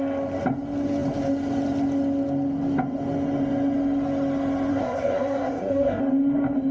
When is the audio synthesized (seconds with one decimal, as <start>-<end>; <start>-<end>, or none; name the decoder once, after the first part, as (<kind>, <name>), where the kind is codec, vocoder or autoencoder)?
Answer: 4.7-6.0 (codec, SNAC)